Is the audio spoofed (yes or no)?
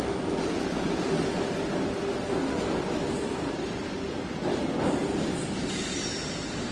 no